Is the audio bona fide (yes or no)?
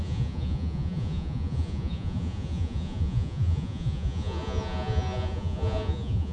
no